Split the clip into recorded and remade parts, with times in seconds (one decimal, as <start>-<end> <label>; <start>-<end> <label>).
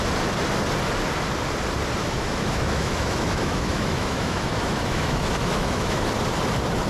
0.0-2.0 recorded; 2.0-6.1 remade; 6.1-6.9 recorded